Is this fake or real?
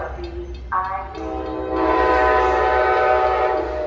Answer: real